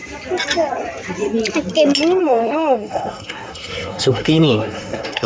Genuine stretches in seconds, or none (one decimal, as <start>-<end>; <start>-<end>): 0.0-2.2